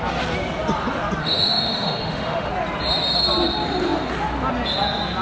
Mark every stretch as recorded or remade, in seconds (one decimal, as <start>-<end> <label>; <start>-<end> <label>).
0.0-1.2 recorded; 1.2-2.5 remade; 2.5-5.2 recorded